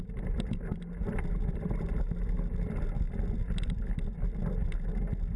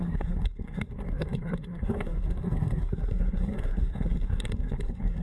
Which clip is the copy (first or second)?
second